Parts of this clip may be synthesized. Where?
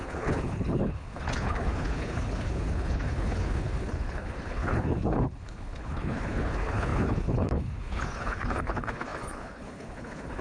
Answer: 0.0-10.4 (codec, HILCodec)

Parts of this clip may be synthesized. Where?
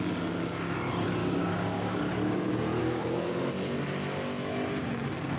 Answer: 1.2-2.0 (codec, DAC); 2.8-3.3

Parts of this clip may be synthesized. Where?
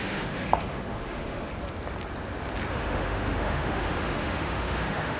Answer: 0.0-1.5 (autoencoder, DAC-VAE); 2.7-5.2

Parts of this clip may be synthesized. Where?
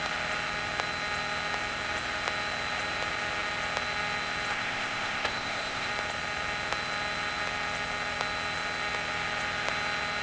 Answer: 4.5-5.9 (codec, ZipCodec)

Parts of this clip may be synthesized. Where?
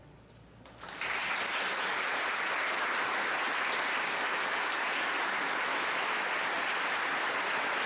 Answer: 5.7-6.3 (autoencoder, DAC-VAE)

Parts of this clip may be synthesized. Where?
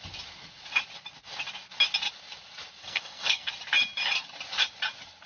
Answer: 2.8-3.5 (codec, SNAC)